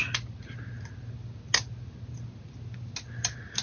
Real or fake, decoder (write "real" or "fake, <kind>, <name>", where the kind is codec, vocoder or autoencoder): real